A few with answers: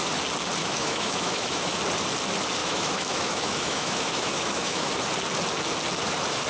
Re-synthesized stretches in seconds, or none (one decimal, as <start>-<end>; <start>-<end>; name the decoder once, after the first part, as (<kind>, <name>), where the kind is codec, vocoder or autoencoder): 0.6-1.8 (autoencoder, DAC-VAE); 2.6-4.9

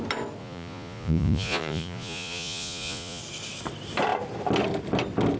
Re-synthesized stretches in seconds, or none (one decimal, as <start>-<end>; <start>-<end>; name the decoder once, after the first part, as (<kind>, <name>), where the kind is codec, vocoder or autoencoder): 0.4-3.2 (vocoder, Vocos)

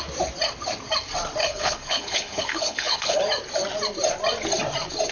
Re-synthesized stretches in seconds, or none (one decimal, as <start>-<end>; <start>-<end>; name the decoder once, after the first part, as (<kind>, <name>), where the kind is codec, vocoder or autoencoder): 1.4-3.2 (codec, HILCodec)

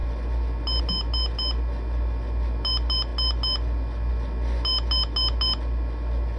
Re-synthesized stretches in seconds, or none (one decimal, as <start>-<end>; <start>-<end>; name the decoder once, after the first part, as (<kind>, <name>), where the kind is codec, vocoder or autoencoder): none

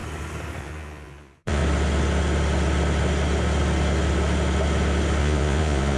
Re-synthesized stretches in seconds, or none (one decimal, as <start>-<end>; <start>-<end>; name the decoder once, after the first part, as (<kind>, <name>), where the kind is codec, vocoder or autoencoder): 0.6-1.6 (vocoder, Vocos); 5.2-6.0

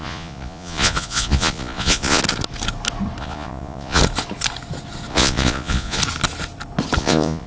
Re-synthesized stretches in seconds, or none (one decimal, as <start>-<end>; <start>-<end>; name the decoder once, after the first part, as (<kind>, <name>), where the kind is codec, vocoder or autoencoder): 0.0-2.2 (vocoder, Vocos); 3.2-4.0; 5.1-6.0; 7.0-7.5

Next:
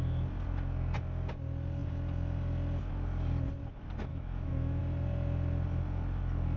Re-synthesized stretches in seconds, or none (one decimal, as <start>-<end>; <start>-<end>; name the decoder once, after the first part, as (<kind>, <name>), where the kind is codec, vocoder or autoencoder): 4.1-4.8 (autoencoder, DAC-VAE)

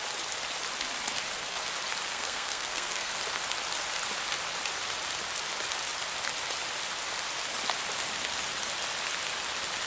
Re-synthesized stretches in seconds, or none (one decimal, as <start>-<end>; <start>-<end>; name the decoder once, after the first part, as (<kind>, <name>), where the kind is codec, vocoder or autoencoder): 2.1-3.1 (codec, SNAC)